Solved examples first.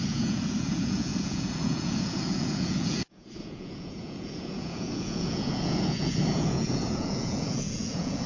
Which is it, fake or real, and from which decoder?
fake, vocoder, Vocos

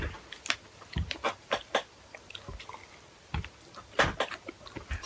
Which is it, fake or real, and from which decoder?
real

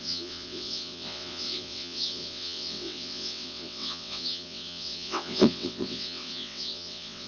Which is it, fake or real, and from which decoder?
fake, vocoder, WaveNeXt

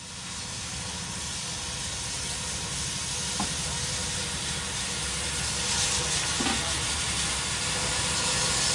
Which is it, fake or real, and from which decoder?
real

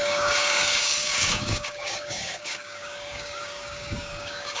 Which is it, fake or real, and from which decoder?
fake, codec, DAC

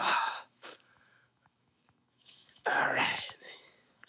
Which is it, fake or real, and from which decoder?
fake, autoencoder, DAC-VAE